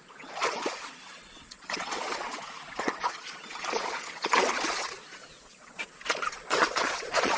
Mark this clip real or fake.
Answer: fake